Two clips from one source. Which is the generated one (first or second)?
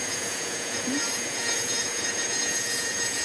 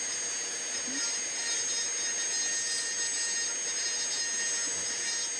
first